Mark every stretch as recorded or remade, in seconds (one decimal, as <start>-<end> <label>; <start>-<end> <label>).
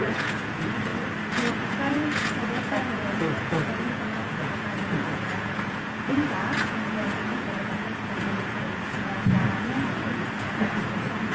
0.0-0.9 remade; 0.9-1.5 recorded; 1.5-11.3 remade